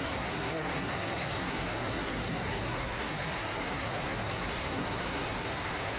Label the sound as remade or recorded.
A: remade